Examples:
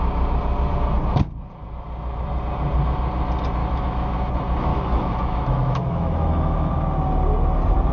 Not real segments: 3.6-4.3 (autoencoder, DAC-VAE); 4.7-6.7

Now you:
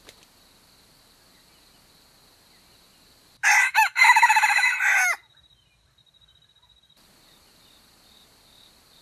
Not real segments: 3.6-4.7 (autoencoder, DAC-VAE)

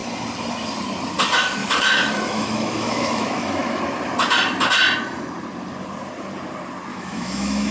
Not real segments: 1.6-3.8 (autoencoder, DAC-VAE); 6.9-7.7

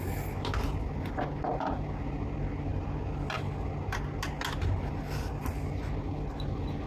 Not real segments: none

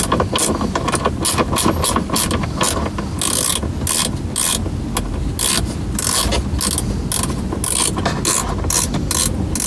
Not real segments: none

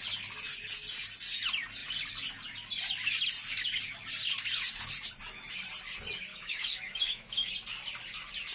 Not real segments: 6.3-7.5 (autoencoder, DAC-VAE)

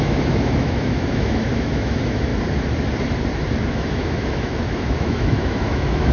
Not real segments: 0.0-2.3 (autoencoder, DAC-VAE); 3.7-6.1